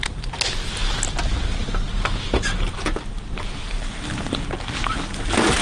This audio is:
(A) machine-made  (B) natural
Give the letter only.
B